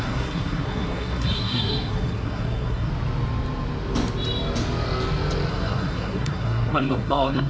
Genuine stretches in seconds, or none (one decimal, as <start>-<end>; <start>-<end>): 2.9-5.5